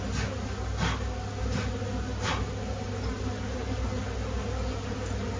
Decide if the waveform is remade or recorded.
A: recorded